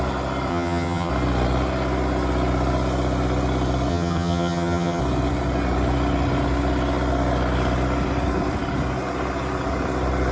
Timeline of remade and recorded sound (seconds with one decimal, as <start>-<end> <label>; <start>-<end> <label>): 0.0-0.5 recorded; 0.5-1.1 remade; 1.1-3.9 recorded; 3.9-5.0 remade; 5.0-10.3 recorded